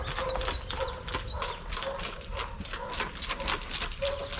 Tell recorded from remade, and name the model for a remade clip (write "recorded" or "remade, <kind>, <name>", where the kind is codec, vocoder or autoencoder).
recorded